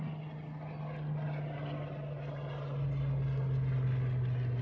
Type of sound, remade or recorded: recorded